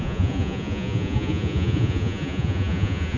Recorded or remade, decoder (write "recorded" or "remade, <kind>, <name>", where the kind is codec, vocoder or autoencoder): remade, vocoder, Vocos